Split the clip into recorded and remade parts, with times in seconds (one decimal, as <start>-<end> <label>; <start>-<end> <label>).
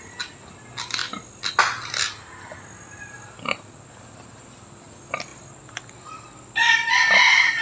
0.0-7.6 recorded